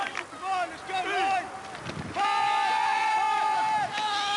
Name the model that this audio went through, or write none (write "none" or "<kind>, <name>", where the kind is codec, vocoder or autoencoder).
none